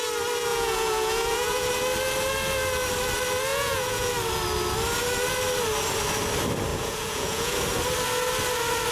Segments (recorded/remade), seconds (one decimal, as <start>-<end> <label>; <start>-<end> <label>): 0.0-0.5 recorded; 0.5-1.7 remade; 1.7-3.5 recorded; 3.5-4.1 remade; 4.1-6.7 recorded; 6.7-7.5 remade; 7.5-8.9 recorded